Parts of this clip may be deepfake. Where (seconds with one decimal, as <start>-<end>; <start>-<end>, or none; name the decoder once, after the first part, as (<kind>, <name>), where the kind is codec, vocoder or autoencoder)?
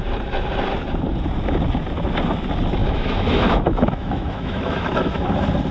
2.8-5.3 (autoencoder, DAC-VAE)